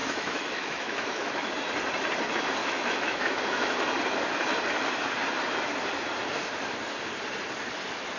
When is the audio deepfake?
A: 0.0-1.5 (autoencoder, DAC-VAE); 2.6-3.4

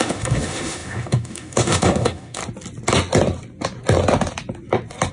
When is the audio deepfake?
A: 0.0-2.4 (autoencoder, DAC-VAE)

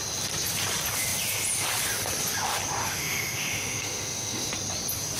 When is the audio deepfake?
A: 2.8-4.5 (autoencoder, DAC-VAE)

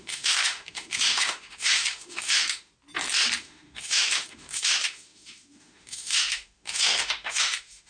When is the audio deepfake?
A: 0.0-2.7 (autoencoder, DAC-VAE); 3.4-7.9

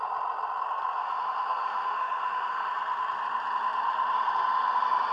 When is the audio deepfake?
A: 1.0-2.7 (autoencoder, DAC-VAE)

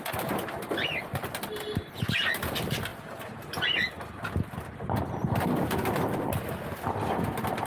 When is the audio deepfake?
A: none